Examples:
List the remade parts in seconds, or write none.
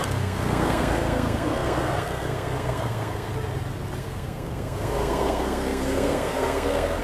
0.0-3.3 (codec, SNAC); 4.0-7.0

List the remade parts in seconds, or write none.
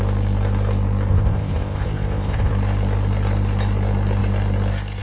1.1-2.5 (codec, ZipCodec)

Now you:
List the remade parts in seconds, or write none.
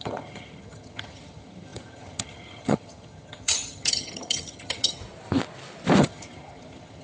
0.0-5.0 (vocoder, HiFi-GAN); 6.0-7.0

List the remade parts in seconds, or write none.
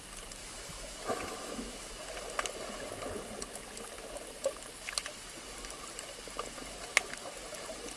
0.4-1.9 (autoencoder, DAC-VAE)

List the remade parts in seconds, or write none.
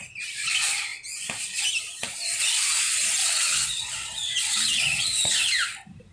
3.2-5.5 (vocoder, WaveNeXt)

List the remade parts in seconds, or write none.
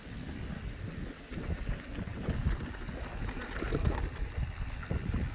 none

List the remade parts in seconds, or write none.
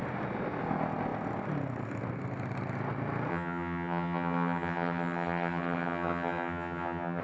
3.3-7.2 (vocoder, HiFi-GAN)